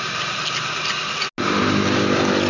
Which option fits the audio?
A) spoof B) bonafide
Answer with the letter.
B